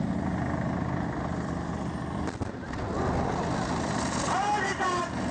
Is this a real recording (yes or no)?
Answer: yes